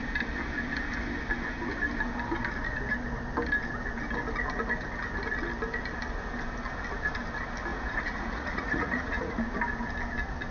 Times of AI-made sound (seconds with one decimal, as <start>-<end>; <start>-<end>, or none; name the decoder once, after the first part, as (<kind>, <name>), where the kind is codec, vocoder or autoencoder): 7.7-9.4 (vocoder, Vocos)